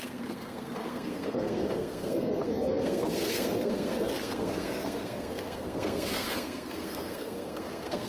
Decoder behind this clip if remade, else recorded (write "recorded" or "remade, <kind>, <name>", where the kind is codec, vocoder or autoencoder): remade, codec, SNAC